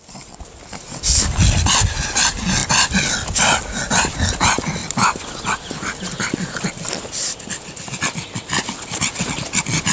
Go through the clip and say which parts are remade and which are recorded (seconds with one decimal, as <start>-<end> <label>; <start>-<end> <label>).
0.0-9.9 recorded

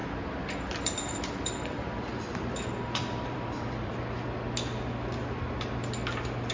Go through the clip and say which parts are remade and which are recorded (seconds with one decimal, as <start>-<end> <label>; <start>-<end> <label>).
0.0-3.9 remade; 3.9-6.5 recorded

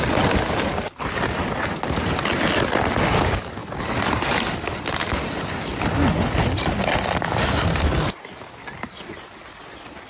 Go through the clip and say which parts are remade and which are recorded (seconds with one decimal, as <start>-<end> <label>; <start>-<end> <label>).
0.0-10.1 recorded

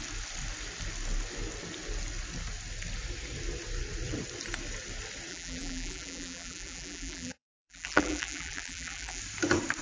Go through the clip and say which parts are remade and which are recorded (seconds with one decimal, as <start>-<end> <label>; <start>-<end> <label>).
0.0-5.3 recorded; 5.3-9.2 remade; 9.2-9.8 recorded

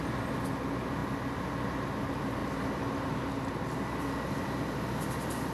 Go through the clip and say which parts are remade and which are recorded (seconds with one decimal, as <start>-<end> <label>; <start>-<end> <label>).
0.0-5.5 recorded

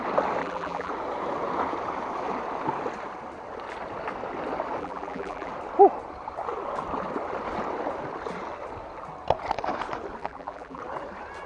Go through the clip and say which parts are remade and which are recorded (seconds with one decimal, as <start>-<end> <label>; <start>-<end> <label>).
0.0-0.4 recorded; 0.4-0.9 remade; 0.9-4.8 recorded; 4.8-5.5 remade; 5.5-10.2 recorded; 10.2-10.8 remade; 10.8-11.5 recorded